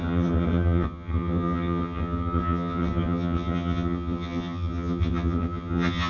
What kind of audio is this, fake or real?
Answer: fake